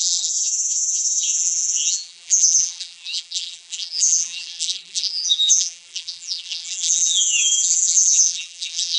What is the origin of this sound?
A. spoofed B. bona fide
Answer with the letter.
A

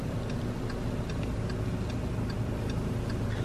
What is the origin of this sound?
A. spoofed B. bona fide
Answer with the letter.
B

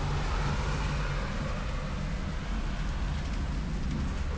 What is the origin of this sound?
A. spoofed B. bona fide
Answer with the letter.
B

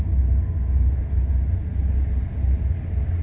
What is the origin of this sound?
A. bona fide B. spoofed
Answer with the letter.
A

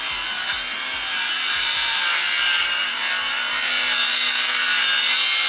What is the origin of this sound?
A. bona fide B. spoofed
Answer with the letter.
B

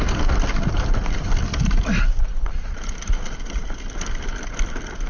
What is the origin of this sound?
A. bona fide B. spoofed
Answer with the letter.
B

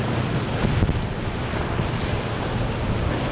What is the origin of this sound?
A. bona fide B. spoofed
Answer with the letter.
A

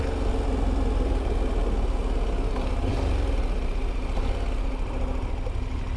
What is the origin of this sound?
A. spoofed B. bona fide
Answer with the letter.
B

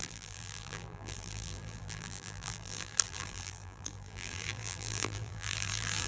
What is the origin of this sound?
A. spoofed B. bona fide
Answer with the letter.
A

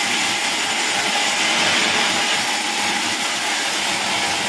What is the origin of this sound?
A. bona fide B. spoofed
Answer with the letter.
A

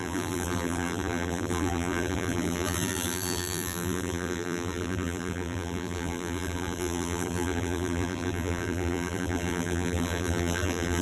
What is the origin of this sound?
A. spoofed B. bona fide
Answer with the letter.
A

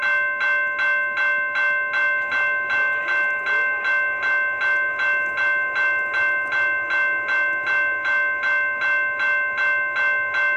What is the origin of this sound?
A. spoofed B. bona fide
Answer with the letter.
B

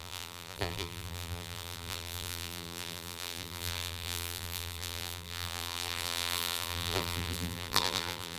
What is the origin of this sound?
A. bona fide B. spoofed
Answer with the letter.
B